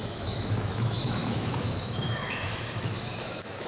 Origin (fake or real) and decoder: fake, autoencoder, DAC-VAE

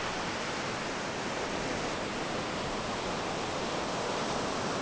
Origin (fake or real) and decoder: real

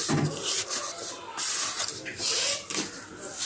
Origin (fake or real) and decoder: real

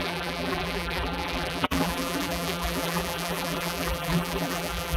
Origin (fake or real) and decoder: fake, vocoder, BigVGAN v2